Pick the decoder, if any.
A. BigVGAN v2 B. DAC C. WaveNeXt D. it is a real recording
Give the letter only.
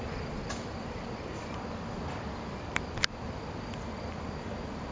A